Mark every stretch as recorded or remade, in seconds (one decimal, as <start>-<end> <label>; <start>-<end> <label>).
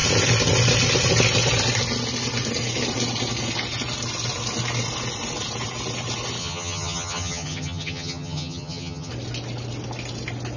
0.0-6.4 recorded; 6.4-9.1 remade; 9.1-10.6 recorded